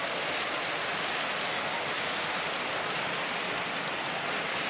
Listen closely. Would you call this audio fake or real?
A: real